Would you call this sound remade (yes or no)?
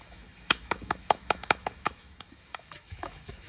yes